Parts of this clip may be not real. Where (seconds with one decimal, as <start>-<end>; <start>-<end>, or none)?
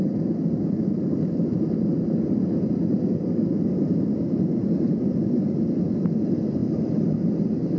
0.0-7.8